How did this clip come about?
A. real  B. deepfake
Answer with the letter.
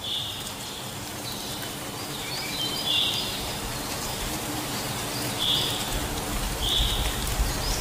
B